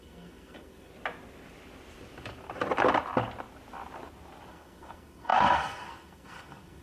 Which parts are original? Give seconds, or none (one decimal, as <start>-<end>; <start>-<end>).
0.9-4.5